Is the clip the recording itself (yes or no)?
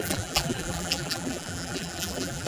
no